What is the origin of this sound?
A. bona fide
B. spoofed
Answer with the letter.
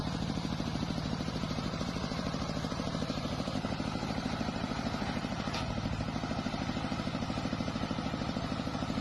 B